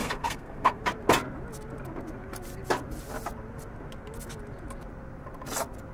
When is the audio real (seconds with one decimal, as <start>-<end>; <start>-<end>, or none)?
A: 0.8-5.9